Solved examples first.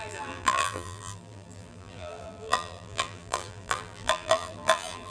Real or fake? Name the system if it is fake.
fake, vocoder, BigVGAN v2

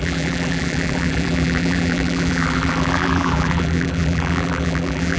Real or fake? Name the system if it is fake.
fake, vocoder, BigVGAN v2